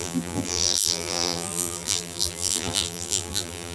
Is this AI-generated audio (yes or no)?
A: yes